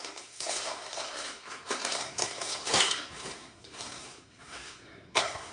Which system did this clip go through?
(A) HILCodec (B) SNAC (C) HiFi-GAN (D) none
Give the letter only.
B